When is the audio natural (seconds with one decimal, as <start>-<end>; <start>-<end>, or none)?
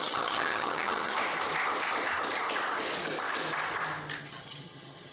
1.1-4.2